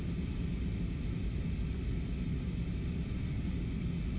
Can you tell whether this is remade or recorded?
recorded